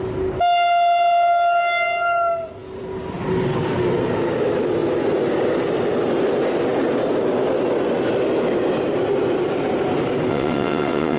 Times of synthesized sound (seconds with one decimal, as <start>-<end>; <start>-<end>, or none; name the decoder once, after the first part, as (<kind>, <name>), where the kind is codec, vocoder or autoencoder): 10.3-11.2 (vocoder, WaveNeXt)